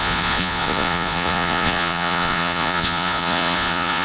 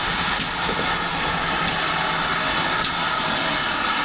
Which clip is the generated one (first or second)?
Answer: first